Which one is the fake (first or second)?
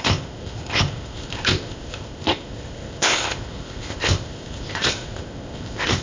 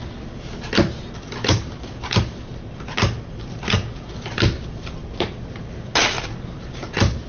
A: first